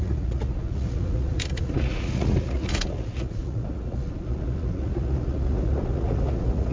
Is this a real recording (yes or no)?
no